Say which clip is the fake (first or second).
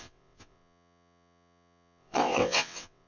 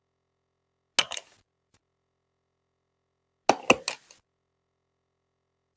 first